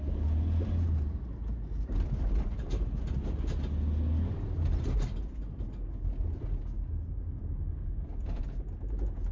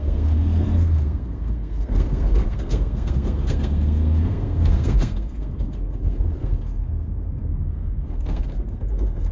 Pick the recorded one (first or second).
first